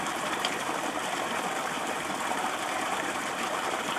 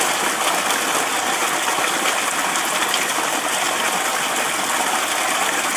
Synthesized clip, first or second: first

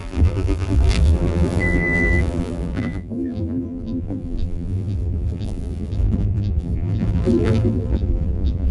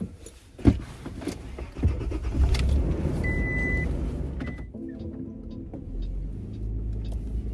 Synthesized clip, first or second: first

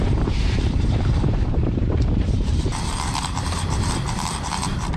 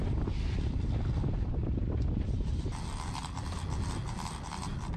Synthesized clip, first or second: first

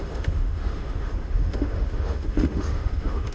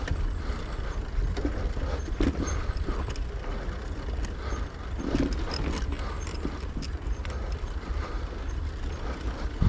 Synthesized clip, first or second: first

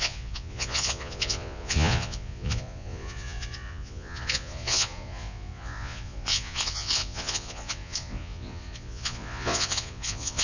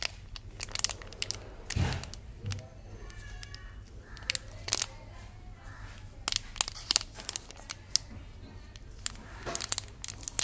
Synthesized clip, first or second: first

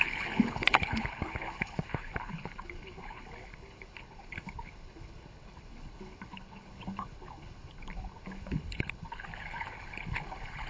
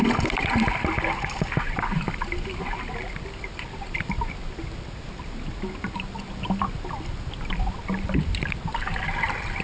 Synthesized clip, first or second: first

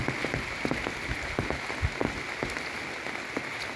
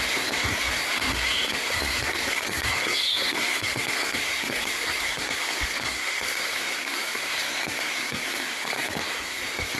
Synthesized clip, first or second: second